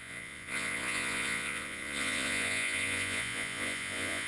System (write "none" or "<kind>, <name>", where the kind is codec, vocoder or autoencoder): vocoder, Vocos